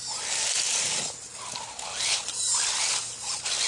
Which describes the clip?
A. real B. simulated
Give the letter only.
A